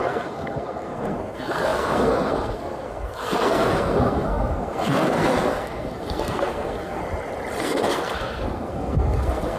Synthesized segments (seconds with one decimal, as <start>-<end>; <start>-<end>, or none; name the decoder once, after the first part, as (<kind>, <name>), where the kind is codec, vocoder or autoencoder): 0.0-7.0 (codec, SNAC); 7.6-9.6